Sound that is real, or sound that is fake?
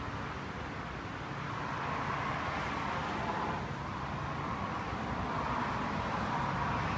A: real